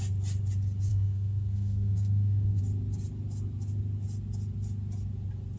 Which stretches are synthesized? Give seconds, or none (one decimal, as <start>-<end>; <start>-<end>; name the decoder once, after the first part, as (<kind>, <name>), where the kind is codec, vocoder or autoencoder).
0.9-2.6 (codec, SNAC)